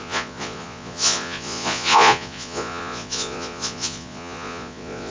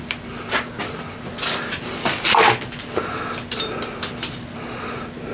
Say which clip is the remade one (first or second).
first